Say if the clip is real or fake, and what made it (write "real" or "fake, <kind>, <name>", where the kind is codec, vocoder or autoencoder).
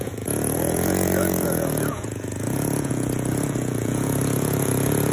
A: fake, vocoder, Vocos